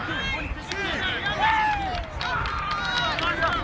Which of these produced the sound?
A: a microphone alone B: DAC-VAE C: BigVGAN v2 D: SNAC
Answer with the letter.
A